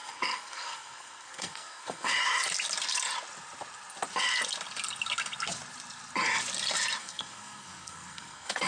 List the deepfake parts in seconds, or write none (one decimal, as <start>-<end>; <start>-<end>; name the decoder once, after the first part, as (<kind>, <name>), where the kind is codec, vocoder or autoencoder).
0.0-2.1 (codec, SNAC); 7.0-8.7